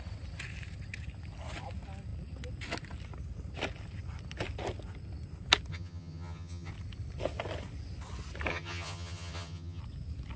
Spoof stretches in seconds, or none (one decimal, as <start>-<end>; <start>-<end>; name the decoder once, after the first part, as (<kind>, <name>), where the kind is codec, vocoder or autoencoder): 5.7-6.7 (vocoder, HiFi-GAN); 8.5-9.8